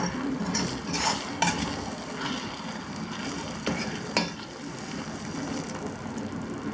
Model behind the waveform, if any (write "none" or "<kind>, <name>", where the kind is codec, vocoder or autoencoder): none